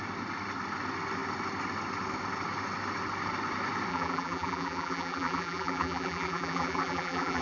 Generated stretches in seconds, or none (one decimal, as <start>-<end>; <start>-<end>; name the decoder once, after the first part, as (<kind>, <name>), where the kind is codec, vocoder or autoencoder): 3.9-7.4 (vocoder, BigVGAN v2)